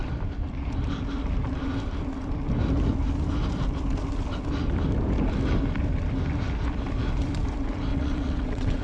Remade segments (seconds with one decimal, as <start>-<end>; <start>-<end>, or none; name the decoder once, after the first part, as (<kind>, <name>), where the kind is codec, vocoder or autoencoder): 7.9-8.8 (vocoder, WaveNeXt)